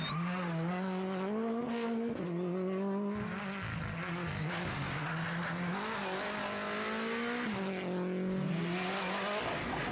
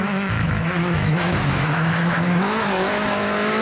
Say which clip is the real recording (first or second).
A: first